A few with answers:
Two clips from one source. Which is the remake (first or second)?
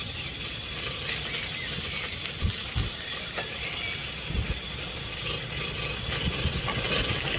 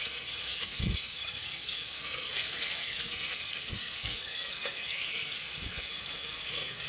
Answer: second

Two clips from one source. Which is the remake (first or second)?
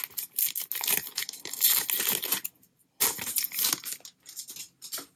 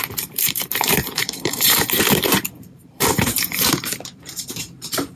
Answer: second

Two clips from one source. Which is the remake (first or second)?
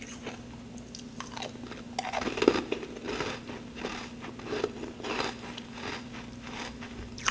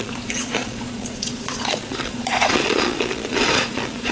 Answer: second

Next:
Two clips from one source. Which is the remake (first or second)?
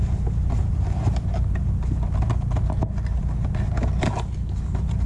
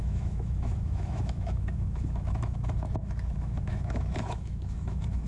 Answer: second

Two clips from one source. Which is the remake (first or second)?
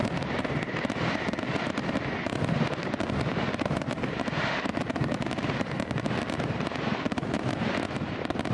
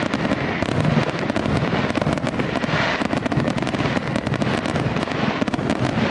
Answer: first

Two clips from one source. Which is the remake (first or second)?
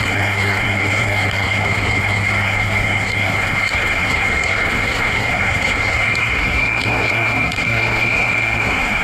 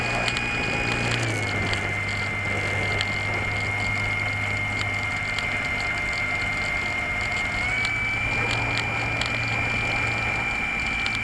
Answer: first